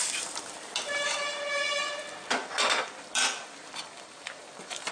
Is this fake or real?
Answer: fake